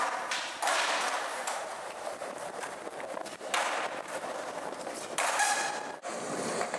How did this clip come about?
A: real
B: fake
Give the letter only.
B